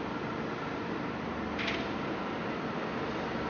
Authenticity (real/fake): real